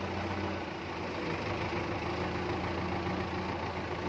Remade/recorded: recorded